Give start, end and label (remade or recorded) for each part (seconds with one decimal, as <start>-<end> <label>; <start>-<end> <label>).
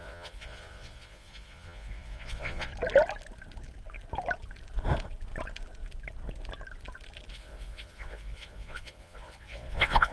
0.0-2.7 remade; 2.7-7.3 recorded; 7.3-10.1 remade